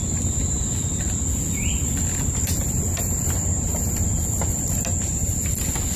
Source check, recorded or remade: recorded